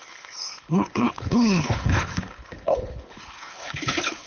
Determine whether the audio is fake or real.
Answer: fake